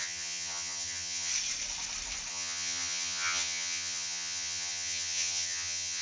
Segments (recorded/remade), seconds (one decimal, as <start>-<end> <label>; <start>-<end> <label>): 0.0-1.3 remade; 1.3-2.3 recorded; 2.3-6.0 remade